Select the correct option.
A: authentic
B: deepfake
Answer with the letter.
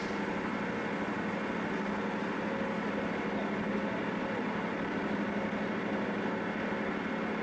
A